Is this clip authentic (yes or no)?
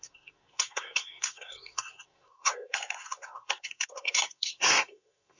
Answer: no